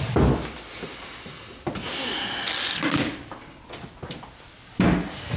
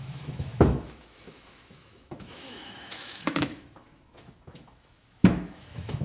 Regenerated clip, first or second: second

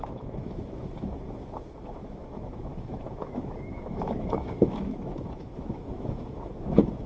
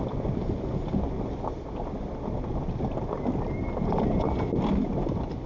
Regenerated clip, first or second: first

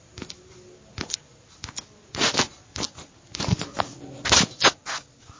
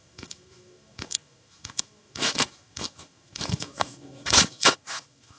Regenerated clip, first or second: second